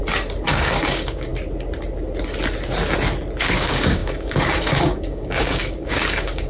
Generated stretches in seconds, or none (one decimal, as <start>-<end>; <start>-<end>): 0.5-1.3; 3.4-6.5